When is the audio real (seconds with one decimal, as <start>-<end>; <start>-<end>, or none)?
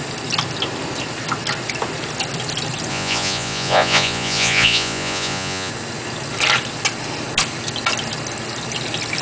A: 0.0-2.9; 5.7-9.2